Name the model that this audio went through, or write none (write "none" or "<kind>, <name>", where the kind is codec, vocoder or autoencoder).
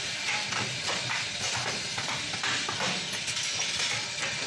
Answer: none